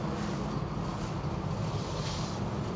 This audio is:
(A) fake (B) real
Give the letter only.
B